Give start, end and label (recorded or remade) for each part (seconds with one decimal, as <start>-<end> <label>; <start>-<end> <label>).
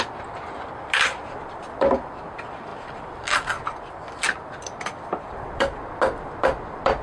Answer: 0.0-7.0 recorded